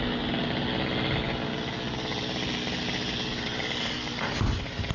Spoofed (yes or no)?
no